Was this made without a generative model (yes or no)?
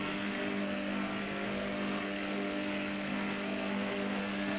no